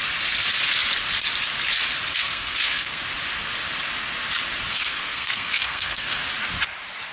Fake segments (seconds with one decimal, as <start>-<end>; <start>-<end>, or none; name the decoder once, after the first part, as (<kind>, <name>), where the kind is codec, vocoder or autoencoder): 2.2-3.0 (codec, SNAC); 4.7-6.3